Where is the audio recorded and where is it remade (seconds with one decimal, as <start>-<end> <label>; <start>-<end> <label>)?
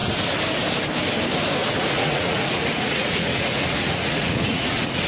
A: 0.0-1.6 recorded; 1.6-5.1 remade